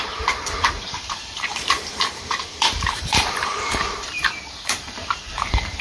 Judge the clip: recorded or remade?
remade